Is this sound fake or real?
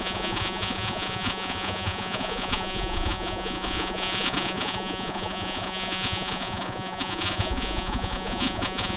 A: fake